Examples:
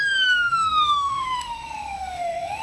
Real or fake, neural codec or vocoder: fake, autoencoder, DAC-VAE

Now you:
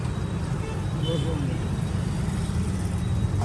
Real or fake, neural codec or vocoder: real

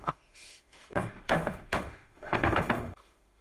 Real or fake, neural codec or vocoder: fake, autoencoder, DAC-VAE